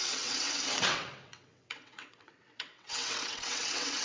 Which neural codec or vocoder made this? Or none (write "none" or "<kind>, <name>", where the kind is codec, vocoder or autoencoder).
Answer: vocoder, WaveNeXt